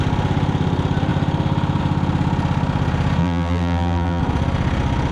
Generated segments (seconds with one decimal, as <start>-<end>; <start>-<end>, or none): 3.2-4.2